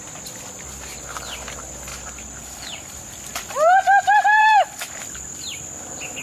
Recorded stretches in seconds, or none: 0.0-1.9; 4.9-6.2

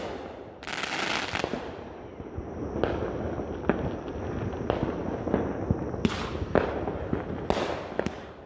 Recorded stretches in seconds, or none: 0.0-1.5; 2.6-6.3; 7.0-8.5